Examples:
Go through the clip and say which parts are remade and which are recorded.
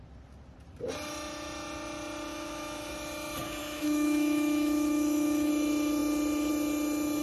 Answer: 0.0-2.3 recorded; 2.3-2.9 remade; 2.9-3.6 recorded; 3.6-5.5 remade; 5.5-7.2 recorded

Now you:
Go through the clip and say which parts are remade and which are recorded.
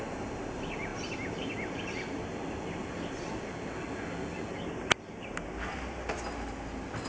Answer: 0.0-7.1 recorded